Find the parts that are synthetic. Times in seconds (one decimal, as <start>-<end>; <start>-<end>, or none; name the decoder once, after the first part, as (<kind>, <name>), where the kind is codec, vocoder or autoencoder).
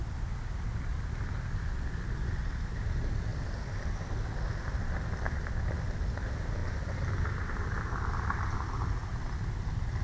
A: 3.3-4.1 (vocoder, BigVGAN v2); 6.6-7.5; 9.0-9.6